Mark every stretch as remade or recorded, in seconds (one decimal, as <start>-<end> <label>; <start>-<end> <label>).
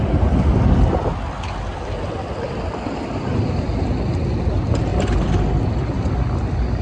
0.0-1.7 recorded; 1.7-2.6 remade; 2.6-4.9 recorded; 4.9-5.6 remade; 5.6-6.8 recorded